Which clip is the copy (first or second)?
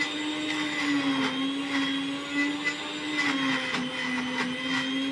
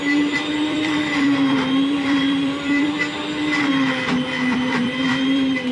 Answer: second